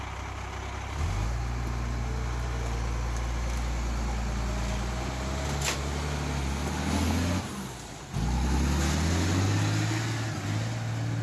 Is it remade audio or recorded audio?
recorded